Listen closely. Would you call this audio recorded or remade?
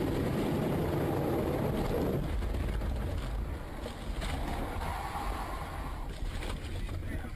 recorded